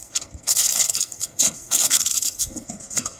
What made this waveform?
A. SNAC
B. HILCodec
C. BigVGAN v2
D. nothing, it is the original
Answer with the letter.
A